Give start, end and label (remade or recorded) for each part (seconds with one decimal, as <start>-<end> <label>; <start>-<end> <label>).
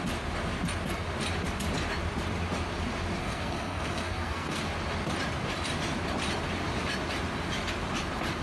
0.0-3.2 recorded; 3.2-4.6 remade; 4.6-8.4 recorded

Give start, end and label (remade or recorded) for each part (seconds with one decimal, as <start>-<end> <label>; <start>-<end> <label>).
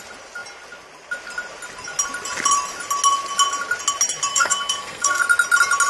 0.0-4.3 recorded; 4.3-5.2 remade; 5.2-5.9 recorded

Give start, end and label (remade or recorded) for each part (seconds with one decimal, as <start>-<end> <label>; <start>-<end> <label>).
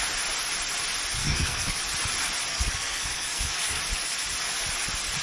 0.0-1.2 recorded; 1.2-1.8 remade; 1.8-2.5 recorded; 2.5-3.8 remade; 3.8-5.2 recorded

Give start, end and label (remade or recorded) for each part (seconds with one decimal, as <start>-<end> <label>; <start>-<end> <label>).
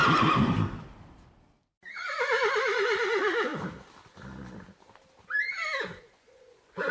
0.0-2.5 recorded; 2.5-3.5 remade; 3.5-6.0 recorded; 6.0-6.9 remade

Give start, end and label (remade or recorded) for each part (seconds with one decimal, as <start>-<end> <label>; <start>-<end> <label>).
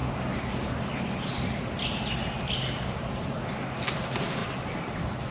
0.0-5.3 recorded